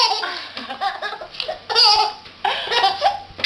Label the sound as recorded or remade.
recorded